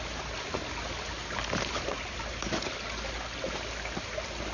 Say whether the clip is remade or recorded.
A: recorded